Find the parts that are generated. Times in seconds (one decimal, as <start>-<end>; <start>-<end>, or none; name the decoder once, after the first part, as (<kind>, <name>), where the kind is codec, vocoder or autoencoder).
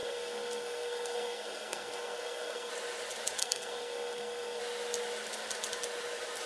0.0-2.7 (codec, SNAC); 3.4-4.6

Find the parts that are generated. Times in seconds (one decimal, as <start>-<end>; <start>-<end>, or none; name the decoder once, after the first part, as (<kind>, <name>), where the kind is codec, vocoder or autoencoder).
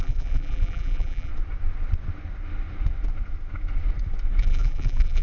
0.0-1.3 (vocoder, BigVGAN v2); 4.4-5.2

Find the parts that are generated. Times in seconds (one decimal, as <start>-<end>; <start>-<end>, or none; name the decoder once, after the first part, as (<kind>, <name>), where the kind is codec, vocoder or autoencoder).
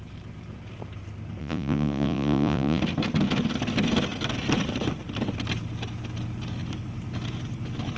1.4-2.8 (vocoder, Vocos)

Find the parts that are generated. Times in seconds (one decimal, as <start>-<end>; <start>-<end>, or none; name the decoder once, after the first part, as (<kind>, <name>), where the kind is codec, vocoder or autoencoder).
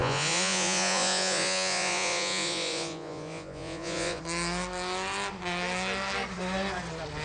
0.0-4.2 (vocoder, Vocos)